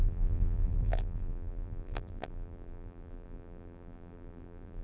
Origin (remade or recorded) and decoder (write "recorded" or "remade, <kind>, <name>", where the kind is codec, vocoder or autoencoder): remade, vocoder, BigVGAN v2